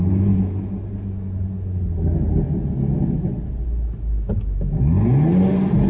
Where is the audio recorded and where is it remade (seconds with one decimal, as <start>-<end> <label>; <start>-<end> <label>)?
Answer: 0.0-5.9 recorded